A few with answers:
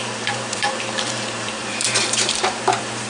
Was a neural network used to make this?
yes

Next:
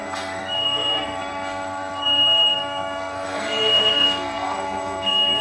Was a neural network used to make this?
yes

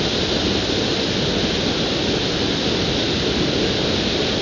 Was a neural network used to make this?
no